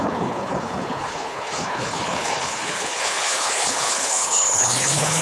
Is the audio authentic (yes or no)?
no